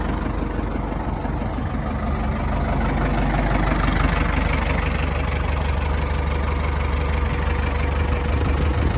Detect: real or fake real